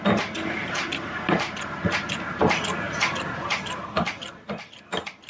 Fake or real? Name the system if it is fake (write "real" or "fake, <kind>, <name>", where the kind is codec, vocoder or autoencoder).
real